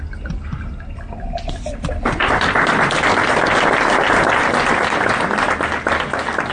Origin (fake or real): real